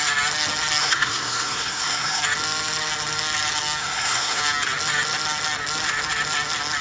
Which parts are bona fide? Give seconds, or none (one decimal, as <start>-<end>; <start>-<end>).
0.0-0.8; 2.2-3.8; 4.4-6.8